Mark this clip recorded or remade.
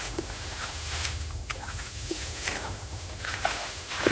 remade